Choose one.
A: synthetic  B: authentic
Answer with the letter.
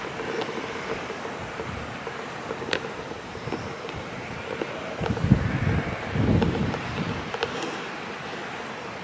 B